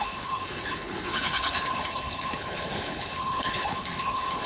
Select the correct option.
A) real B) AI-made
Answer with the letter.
B